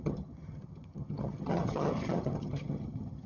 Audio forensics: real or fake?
fake